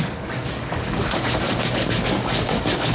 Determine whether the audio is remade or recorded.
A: remade